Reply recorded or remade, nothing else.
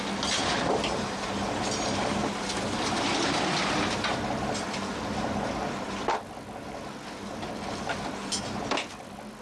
recorded